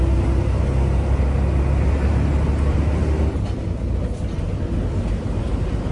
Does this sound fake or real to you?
real